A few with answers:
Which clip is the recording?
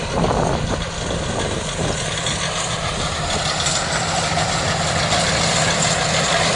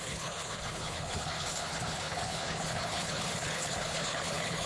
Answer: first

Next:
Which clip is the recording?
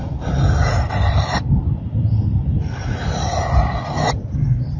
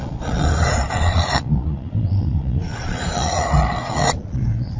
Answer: first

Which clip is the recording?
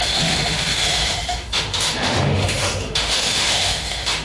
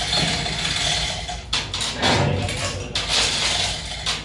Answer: second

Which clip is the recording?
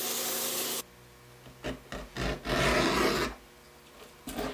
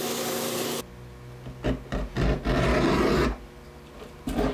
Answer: first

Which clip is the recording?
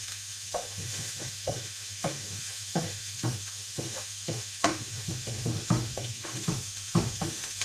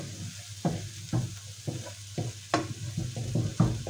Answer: second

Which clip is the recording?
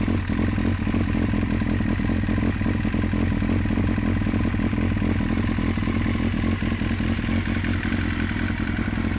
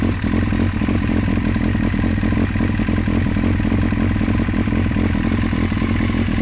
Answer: first